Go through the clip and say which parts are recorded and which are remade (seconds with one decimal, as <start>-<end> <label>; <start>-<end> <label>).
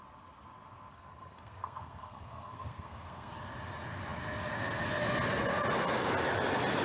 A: 0.0-0.9 recorded; 0.9-3.3 remade; 3.3-6.8 recorded